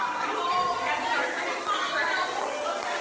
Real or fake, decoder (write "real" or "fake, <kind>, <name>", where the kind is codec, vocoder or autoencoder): real